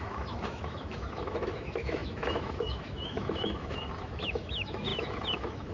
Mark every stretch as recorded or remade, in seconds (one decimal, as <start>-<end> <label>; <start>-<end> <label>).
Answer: 0.0-5.7 remade